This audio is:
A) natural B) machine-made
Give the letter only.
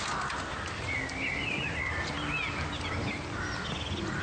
A